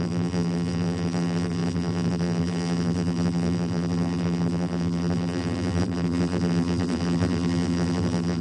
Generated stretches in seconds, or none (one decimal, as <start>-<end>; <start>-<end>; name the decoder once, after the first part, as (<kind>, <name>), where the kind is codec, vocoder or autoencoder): 0.0-8.4 (vocoder, BigVGAN v2)